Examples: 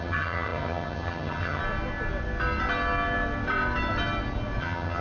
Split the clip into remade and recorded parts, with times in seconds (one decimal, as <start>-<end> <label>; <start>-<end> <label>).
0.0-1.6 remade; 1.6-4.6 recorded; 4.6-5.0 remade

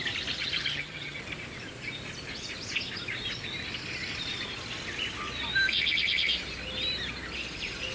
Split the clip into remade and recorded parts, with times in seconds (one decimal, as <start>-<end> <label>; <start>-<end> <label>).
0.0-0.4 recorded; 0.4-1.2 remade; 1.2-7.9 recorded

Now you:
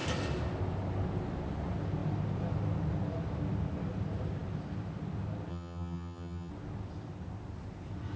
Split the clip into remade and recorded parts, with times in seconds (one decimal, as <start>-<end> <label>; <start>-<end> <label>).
0.0-5.5 recorded; 5.5-6.5 remade; 6.5-8.2 recorded